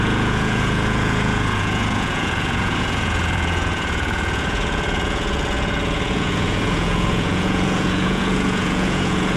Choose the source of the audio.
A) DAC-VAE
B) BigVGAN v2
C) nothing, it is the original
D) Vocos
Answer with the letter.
D